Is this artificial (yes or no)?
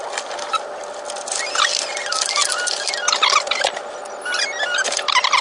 no